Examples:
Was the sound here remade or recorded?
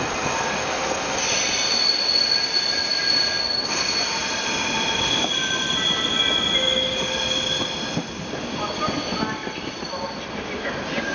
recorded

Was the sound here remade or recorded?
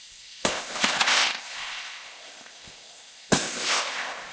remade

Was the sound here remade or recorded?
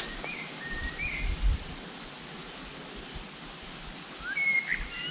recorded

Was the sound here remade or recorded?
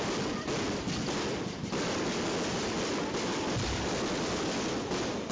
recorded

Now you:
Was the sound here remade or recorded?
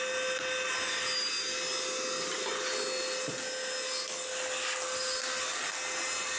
recorded